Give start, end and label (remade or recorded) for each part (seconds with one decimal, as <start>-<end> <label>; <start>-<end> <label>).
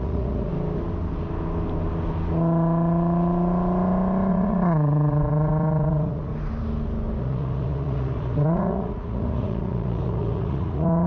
0.0-0.5 remade; 0.5-4.3 recorded; 4.3-6.3 remade; 6.3-7.2 recorded; 7.2-11.1 remade